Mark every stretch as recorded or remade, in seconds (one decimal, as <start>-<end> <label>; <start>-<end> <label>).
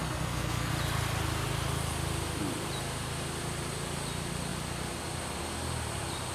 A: 0.0-0.7 remade; 0.7-6.3 recorded